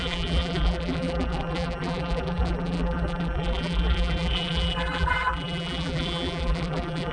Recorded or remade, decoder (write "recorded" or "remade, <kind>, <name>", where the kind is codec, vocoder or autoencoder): remade, vocoder, BigVGAN v2